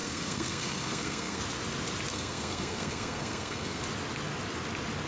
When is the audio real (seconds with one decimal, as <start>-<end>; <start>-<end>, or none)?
1.4-2.1; 3.8-5.1